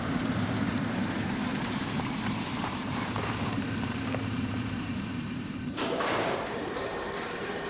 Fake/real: fake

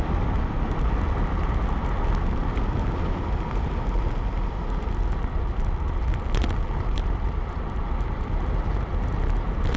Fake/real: real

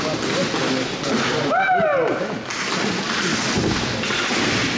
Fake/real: real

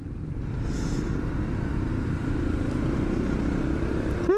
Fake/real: real